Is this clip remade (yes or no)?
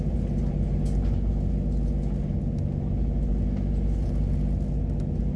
no